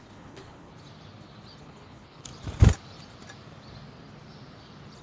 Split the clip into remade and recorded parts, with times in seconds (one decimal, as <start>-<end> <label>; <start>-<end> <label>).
0.0-0.7 remade; 0.7-1.6 recorded; 1.6-2.3 remade; 2.3-5.0 recorded